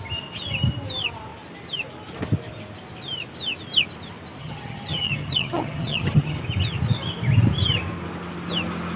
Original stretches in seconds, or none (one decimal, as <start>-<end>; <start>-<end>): 0.0-4.4; 6.4-9.0